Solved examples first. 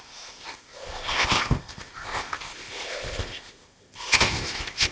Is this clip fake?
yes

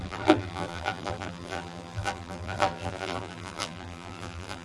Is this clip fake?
yes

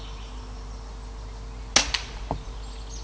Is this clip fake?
no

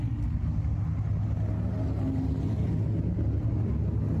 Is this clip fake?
no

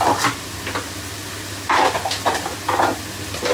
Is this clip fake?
no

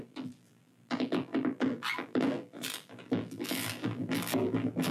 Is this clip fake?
yes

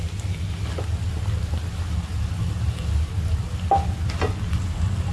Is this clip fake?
no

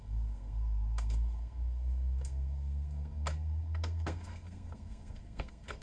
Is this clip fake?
yes